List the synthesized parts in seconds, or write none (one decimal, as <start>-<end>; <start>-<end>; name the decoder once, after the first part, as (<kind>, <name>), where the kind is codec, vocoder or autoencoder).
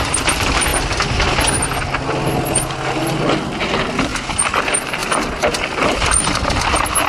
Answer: none